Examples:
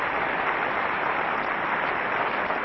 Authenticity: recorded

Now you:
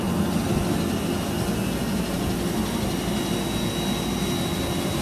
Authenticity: recorded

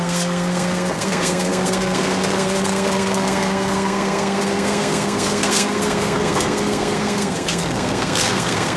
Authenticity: remade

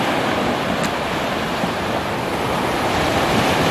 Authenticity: recorded